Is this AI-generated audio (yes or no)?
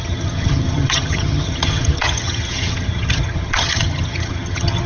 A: yes